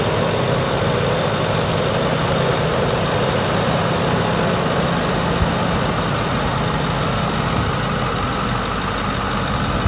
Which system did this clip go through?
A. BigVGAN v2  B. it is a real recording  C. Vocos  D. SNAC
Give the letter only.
B